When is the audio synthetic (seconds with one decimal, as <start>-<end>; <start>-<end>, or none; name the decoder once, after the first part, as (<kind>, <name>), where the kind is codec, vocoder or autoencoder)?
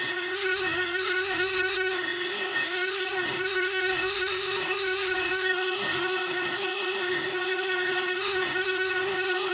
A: 0.0-9.5 (codec, SNAC)